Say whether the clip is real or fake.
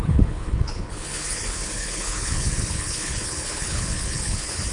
fake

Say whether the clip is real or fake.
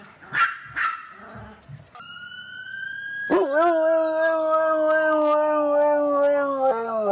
real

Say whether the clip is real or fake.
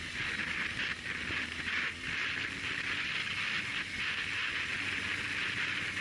real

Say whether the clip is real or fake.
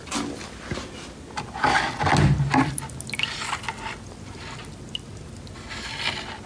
real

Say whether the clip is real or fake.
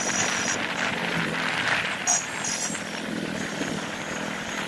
fake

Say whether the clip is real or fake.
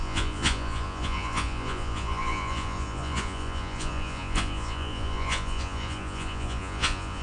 fake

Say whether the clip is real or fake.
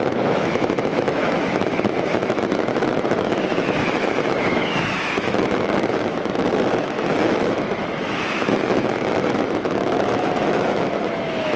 fake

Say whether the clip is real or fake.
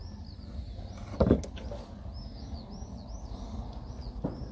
real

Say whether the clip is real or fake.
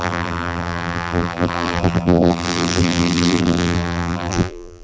fake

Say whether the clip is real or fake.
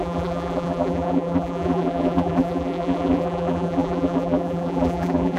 fake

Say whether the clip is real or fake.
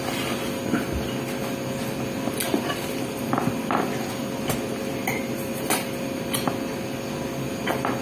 real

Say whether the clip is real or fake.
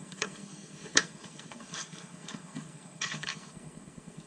fake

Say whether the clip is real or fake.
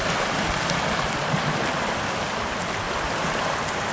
real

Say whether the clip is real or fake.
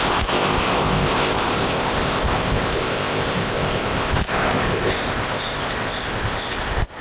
fake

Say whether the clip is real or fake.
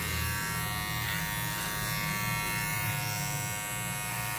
real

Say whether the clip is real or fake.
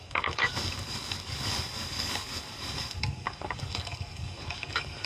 fake